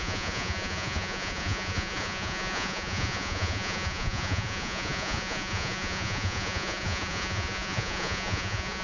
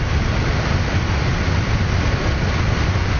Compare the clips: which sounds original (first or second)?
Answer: second